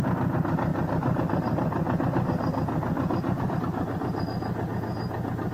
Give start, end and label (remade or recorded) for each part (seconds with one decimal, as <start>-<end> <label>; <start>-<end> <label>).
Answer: 0.0-5.5 recorded